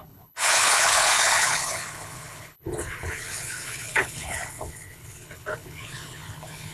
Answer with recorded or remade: remade